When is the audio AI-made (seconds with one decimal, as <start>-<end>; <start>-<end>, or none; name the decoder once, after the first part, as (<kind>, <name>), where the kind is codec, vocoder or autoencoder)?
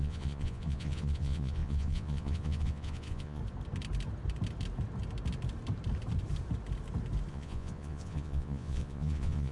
0.0-3.4 (vocoder, Vocos); 7.3-9.5